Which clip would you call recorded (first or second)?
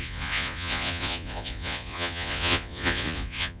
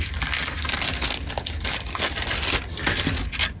second